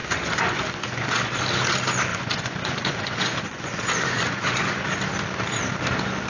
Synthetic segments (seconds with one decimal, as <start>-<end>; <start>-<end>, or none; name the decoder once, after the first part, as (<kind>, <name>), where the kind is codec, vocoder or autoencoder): 0.0-1.3 (vocoder, Vocos); 2.1-4.8